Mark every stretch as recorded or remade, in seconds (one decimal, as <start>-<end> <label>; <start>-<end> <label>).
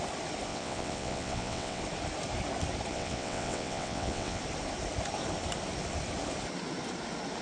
0.0-0.5 recorded; 0.5-1.8 remade; 1.8-2.9 recorded; 2.9-4.4 remade; 4.4-7.4 recorded